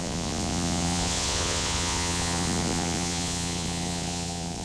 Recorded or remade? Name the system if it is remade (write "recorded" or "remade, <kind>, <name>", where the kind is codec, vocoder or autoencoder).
remade, vocoder, Vocos